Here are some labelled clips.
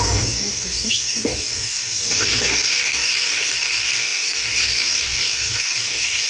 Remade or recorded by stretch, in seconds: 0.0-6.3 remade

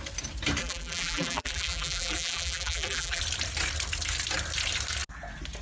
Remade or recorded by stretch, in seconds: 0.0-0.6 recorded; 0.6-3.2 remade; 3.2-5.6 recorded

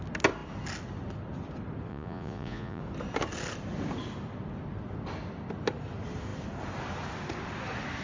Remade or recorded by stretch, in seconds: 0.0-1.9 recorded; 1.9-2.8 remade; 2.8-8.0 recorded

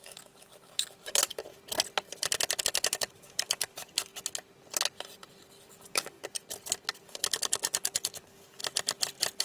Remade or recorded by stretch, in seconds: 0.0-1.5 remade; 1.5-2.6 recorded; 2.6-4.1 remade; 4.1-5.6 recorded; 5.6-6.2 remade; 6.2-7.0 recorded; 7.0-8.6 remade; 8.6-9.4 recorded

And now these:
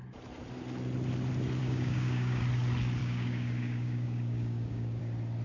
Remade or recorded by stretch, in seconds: 0.0-1.6 recorded; 1.6-2.4 remade; 2.4-3.0 recorded; 3.0-5.0 remade; 5.0-5.4 recorded

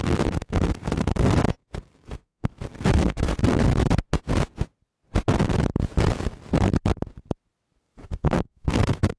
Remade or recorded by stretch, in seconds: 0.0-3.6 remade; 3.6-7.8 recorded; 7.8-9.2 remade